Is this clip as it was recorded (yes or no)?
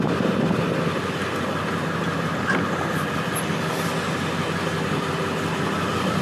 yes